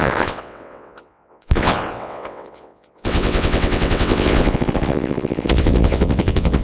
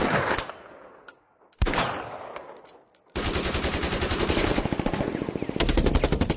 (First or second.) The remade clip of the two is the first